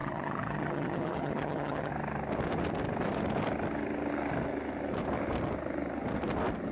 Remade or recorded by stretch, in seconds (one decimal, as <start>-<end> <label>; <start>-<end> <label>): 0.0-1.9 remade; 1.9-6.7 recorded